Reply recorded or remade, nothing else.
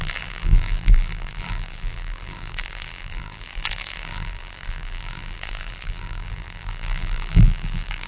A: remade